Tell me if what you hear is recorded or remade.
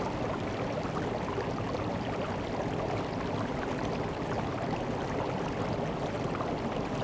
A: recorded